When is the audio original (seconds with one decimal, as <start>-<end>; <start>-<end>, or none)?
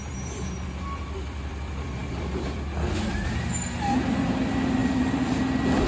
0.0-4.8; 5.4-5.9